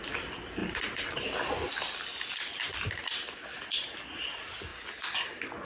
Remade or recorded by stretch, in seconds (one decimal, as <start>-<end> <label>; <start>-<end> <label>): 0.0-5.7 recorded